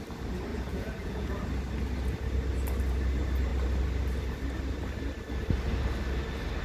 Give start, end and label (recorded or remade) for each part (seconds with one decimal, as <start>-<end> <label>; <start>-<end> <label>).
0.0-0.5 recorded; 0.5-1.4 remade; 1.4-6.6 recorded